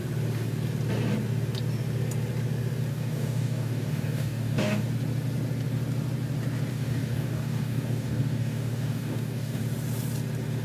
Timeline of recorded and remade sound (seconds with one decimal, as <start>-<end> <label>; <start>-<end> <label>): 0.0-2.9 recorded; 2.9-4.9 remade; 4.9-6.7 recorded; 6.7-9.6 remade; 9.6-10.6 recorded